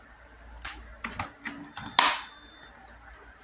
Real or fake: real